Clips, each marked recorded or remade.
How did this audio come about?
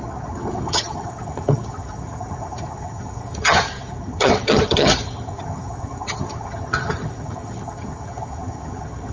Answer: remade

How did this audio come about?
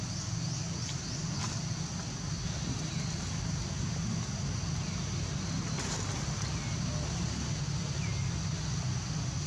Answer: recorded